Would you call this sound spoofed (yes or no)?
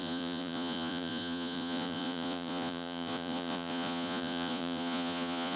yes